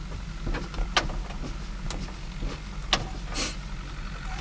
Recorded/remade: recorded